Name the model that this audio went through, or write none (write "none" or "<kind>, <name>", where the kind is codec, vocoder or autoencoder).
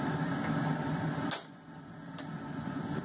none